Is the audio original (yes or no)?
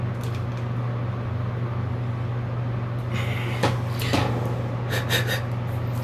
yes